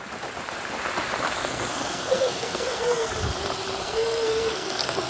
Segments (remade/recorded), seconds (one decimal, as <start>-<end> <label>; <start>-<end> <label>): 0.0-1.4 recorded; 1.4-3.1 remade; 3.1-3.8 recorded; 3.8-5.1 remade